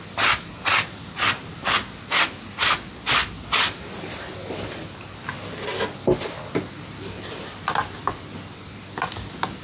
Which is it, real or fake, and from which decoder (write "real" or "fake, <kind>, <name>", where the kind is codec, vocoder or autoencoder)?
real